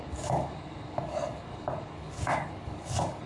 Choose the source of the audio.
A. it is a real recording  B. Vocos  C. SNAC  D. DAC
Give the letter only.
D